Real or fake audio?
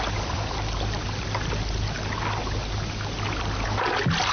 real